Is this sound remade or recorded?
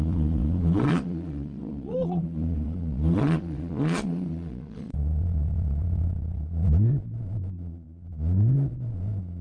remade